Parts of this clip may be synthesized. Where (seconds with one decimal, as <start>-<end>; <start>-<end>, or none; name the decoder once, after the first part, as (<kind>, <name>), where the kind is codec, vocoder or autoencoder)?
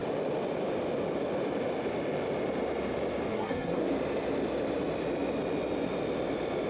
3.3-3.9 (codec, SNAC)